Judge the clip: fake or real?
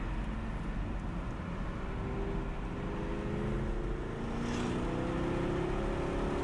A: real